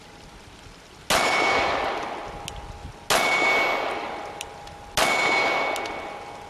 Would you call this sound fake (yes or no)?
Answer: no